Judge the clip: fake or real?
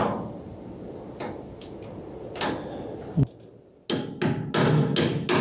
real